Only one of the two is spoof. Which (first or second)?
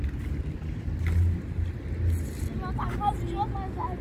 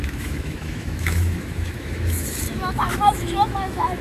second